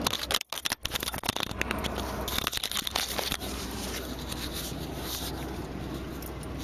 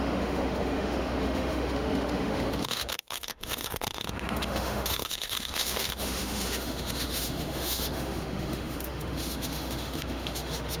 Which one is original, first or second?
first